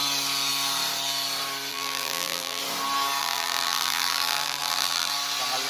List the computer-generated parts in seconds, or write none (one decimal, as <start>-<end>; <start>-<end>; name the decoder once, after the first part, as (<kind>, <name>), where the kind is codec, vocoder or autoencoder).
1.7-2.6 (vocoder, BigVGAN v2); 3.2-5.1